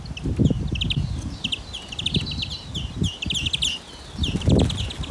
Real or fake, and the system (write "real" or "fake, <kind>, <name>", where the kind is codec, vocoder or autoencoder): real